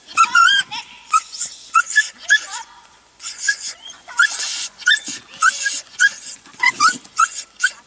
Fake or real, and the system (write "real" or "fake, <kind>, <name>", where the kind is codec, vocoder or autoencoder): fake, vocoder, Vocos